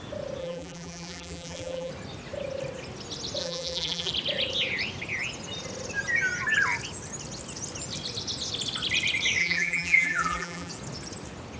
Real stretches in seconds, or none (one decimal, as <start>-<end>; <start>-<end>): 0.0-0.4; 1.9-3.4; 4.1-9.4; 10.7-11.6